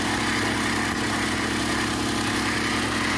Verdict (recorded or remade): recorded